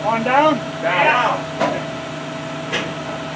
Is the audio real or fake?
real